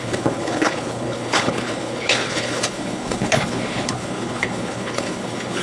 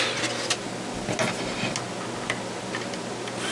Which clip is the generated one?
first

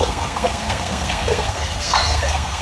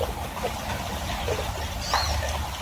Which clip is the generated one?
first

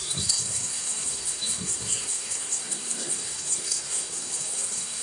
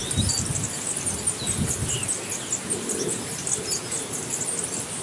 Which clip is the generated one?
first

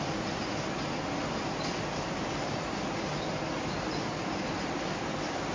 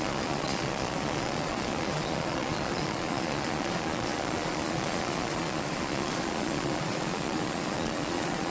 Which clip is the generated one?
second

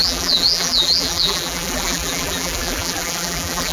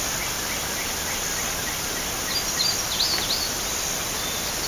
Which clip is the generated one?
first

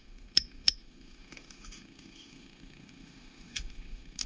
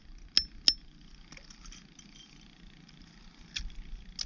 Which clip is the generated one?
first